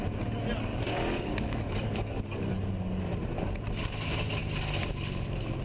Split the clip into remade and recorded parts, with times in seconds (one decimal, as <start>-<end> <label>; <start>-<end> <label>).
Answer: 0.0-0.7 recorded; 0.7-3.0 remade; 3.0-5.6 recorded